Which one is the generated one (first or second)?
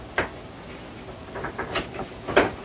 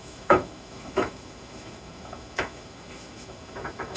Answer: second